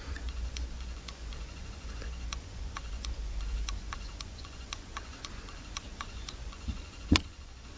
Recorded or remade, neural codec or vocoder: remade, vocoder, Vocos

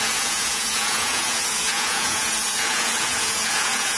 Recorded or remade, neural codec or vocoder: remade, vocoder, Vocos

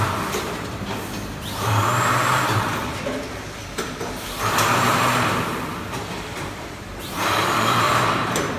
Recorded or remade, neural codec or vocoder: remade, vocoder, BigVGAN v2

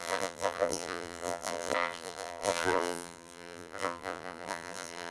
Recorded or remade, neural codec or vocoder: remade, vocoder, BigVGAN v2